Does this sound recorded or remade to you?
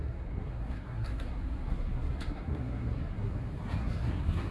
remade